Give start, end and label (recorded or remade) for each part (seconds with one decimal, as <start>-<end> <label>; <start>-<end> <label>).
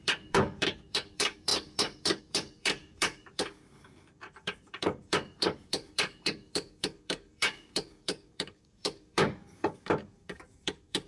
0.0-11.1 remade